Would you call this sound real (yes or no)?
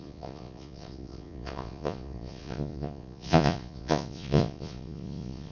no